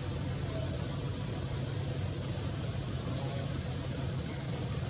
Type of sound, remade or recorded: recorded